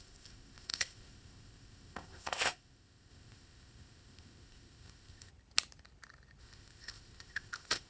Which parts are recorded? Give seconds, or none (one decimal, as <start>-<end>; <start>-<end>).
5.3-6.4